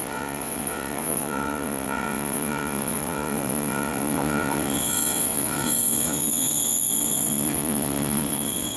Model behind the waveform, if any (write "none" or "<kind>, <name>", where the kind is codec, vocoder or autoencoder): vocoder, WaveNeXt